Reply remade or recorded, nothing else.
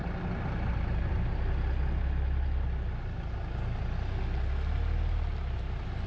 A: recorded